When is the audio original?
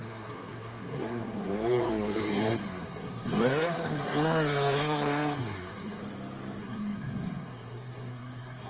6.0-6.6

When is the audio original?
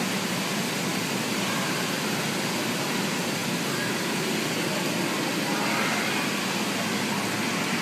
0.0-7.8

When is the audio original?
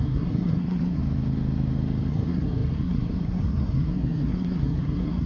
1.0-2.1